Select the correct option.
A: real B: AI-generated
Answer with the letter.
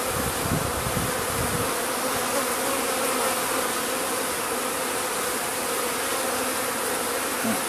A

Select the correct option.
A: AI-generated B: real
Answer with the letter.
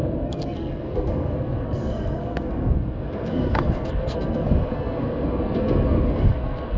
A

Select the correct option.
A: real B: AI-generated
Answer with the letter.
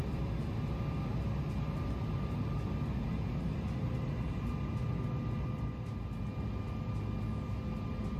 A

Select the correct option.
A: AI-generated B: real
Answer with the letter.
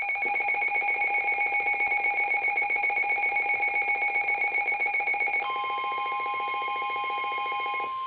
B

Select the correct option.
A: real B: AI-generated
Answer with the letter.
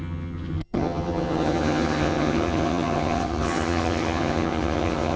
B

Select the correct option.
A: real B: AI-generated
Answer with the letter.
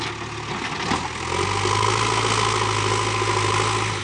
A